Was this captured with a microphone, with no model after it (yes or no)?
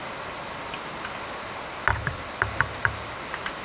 yes